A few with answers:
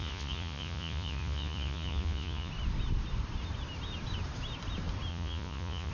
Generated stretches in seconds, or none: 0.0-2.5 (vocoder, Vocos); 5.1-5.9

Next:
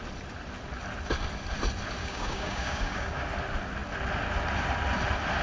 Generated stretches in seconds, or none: 2.0-3.2 (codec, DAC)

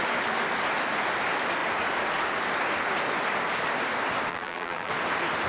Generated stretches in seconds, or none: 4.3-4.9 (vocoder, BigVGAN v2)

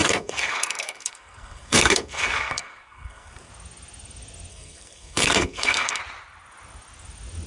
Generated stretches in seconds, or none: 0.0-3.5 (codec, SNAC); 4.5-6.0

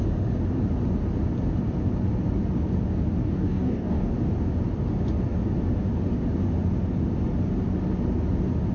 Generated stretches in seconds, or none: 3.2-4.1 (codec, DAC)